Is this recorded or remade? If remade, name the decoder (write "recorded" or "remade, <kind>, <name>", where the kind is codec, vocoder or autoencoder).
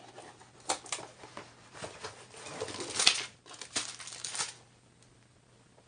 recorded